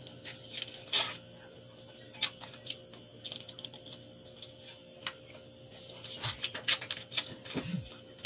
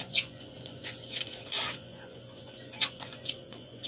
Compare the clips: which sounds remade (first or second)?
second